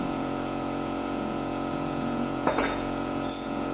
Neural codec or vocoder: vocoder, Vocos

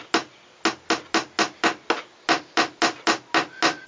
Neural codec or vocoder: none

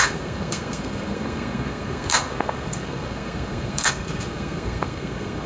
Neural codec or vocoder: codec, SNAC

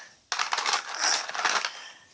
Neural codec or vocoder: none